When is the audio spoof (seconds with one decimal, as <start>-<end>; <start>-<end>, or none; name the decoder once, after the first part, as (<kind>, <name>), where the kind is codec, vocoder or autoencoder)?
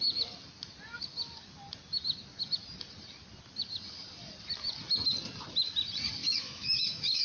6.2-7.2 (autoencoder, DAC-VAE)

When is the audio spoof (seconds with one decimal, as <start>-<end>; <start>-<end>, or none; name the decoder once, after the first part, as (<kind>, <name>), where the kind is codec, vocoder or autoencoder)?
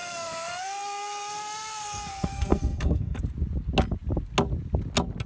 0.0-3.2 (codec, SNAC)